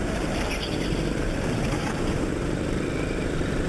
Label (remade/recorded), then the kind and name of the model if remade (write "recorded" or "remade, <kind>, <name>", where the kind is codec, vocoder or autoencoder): remade, vocoder, BigVGAN v2